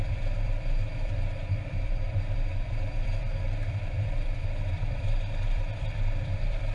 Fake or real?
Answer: fake